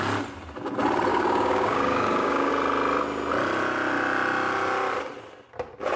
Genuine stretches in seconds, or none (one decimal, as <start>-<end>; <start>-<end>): 0.0-1.1; 2.5-6.0